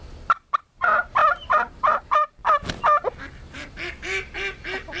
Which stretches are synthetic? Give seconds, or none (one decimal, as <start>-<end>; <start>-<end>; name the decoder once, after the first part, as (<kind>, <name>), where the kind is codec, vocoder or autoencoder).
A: 0.6-2.4 (vocoder, BigVGAN v2); 3.2-5.0